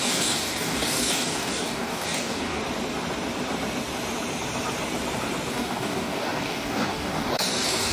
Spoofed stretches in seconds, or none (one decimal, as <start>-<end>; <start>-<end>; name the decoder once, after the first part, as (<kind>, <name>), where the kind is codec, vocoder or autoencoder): 0.0-2.6 (codec, DAC); 5.5-7.9